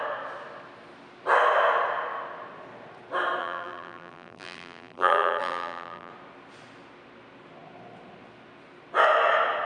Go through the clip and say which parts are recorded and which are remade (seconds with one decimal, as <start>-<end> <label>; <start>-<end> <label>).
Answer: 0.0-3.4 recorded; 3.4-6.1 remade; 6.1-9.7 recorded